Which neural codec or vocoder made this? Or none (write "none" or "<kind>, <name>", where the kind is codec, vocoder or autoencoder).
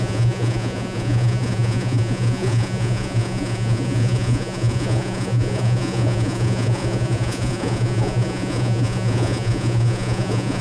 vocoder, Vocos